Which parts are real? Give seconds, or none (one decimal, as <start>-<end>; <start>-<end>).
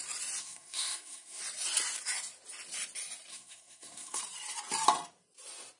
0.0-0.4; 1.4-3.3; 4.2-5.8